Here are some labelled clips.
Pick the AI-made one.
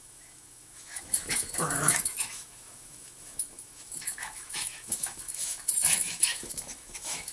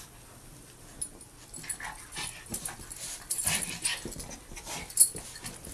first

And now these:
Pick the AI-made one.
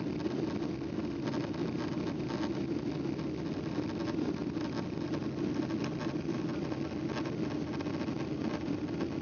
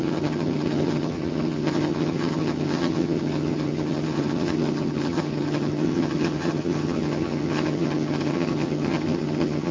second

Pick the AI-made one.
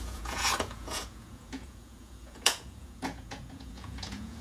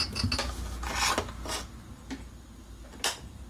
first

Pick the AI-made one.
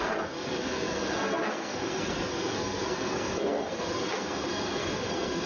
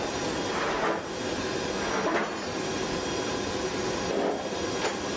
first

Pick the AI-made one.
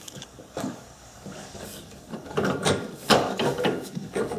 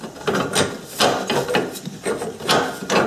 first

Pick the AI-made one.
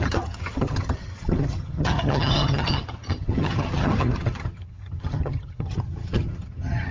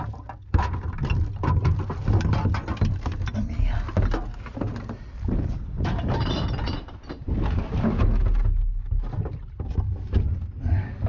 first